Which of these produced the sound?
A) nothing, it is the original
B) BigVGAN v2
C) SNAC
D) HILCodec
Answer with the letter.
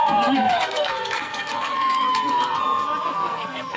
C